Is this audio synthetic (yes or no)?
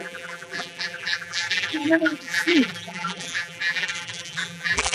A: yes